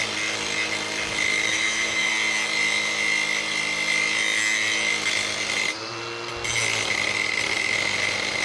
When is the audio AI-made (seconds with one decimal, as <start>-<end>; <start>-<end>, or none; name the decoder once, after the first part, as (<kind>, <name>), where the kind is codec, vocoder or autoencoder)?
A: 1.5-2.1 (autoencoder, DAC-VAE)